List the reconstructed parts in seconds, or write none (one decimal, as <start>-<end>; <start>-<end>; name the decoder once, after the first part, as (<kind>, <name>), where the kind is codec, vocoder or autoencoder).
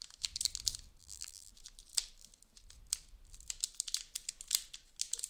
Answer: 1.0-1.5 (vocoder, BigVGAN v2)